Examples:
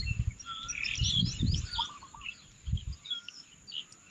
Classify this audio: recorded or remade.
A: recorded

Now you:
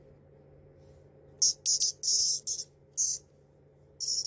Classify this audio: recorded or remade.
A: recorded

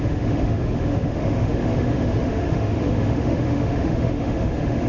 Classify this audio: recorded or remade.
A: remade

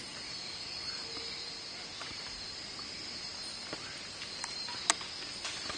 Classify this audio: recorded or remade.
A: recorded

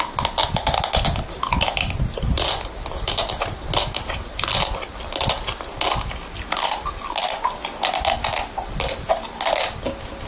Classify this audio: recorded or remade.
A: recorded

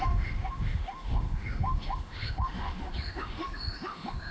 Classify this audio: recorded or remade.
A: remade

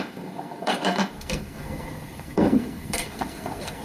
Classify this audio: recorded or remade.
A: remade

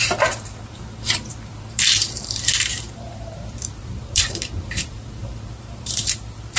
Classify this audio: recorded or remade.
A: remade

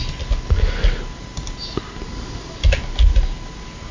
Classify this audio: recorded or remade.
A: recorded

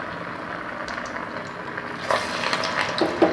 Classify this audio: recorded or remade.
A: recorded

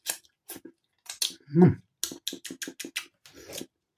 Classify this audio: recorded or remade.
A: recorded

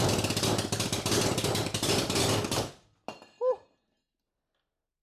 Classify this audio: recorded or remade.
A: recorded